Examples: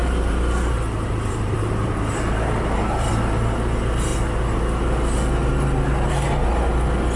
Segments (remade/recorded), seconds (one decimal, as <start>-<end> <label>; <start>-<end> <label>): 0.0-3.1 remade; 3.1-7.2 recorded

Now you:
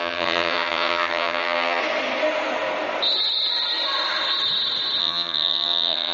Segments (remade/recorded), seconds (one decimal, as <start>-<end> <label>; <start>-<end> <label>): 0.0-1.8 remade; 1.8-5.0 recorded; 5.0-6.1 remade

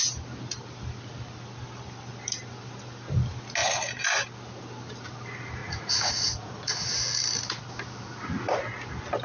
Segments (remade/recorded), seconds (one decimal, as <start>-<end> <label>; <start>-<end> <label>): 0.0-5.6 recorded; 5.6-6.9 remade; 6.9-9.2 recorded